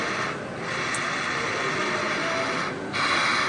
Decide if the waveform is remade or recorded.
recorded